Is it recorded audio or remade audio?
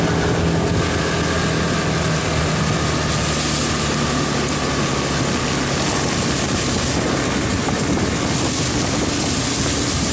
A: recorded